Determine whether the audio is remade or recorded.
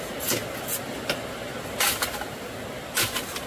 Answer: recorded